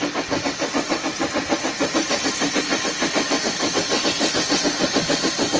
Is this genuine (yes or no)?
yes